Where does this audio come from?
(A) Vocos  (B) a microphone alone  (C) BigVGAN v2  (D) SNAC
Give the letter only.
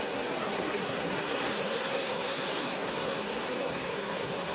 D